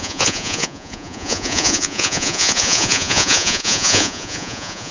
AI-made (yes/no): yes